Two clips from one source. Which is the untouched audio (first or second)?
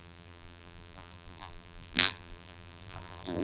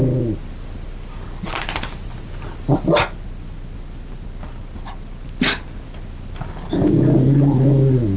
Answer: second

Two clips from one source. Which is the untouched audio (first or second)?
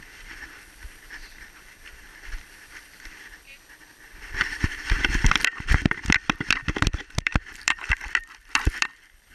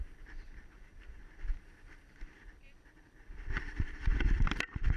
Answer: second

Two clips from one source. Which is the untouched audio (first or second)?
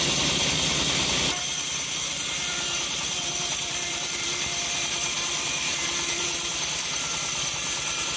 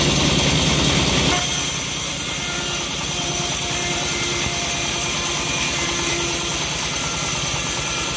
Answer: second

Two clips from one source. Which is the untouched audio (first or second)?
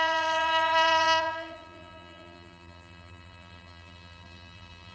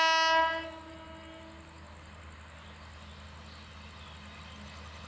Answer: second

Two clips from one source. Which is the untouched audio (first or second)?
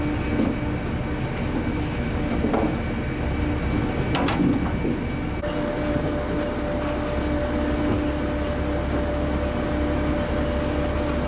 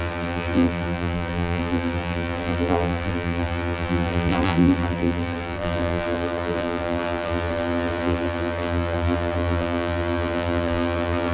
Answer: first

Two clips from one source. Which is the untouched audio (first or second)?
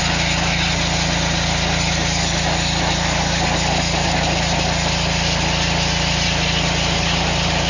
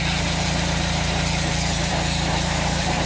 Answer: first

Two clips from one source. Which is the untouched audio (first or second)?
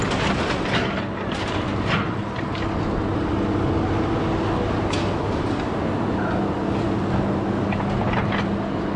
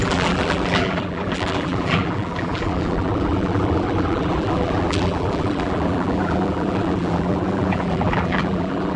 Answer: first